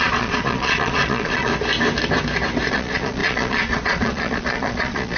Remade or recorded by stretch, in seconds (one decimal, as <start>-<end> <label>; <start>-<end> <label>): 0.0-1.5 remade; 1.5-2.7 recorded; 2.7-5.2 remade